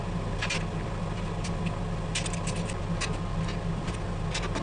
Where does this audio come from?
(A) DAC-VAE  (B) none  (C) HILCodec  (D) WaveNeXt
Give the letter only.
B